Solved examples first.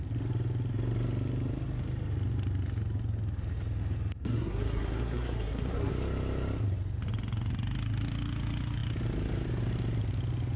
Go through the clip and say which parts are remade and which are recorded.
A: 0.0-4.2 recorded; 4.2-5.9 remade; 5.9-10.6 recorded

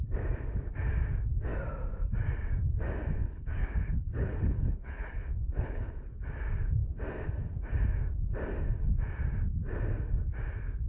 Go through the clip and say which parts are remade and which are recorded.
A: 0.0-3.2 recorded; 3.2-6.1 remade; 6.1-10.9 recorded

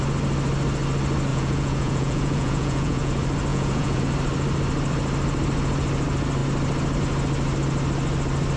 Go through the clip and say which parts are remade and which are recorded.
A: 0.0-1.3 recorded; 1.3-3.1 remade; 3.1-3.5 recorded; 3.5-4.0 remade; 4.0-8.6 recorded

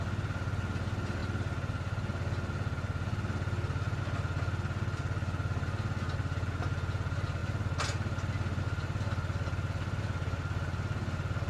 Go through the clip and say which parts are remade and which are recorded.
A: 0.0-11.5 recorded

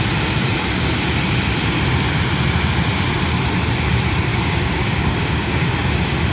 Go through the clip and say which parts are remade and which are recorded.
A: 0.0-4.3 recorded; 4.3-5.7 remade; 5.7-6.3 recorded

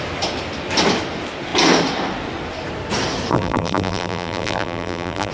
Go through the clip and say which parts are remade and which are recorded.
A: 0.0-3.3 recorded; 3.3-5.3 remade

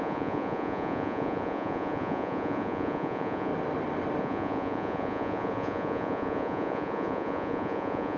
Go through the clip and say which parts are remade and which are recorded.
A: 0.0-3.5 remade; 3.5-4.2 recorded; 4.2-8.2 remade